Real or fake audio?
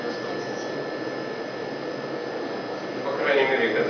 real